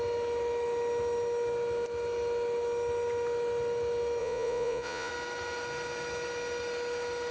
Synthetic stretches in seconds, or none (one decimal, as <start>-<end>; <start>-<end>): 4.2-5.1